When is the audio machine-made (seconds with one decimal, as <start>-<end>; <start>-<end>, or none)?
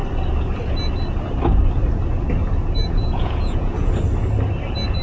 2.8-3.9